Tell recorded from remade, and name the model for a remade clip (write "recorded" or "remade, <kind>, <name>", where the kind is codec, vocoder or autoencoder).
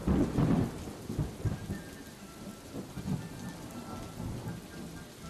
recorded